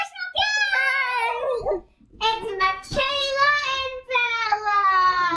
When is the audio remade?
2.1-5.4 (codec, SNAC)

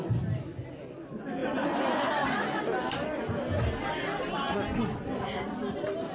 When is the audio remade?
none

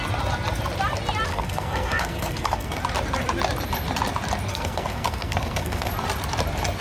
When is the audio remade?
1.3-2.8 (codec, SNAC); 4.5-5.9

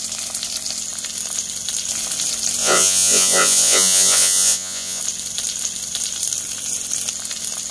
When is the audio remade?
2.6-5.0 (vocoder, Vocos)